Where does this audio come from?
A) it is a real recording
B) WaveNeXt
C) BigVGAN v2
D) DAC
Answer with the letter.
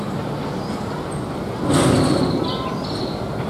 A